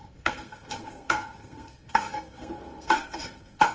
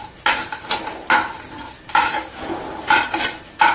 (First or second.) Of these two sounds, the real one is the second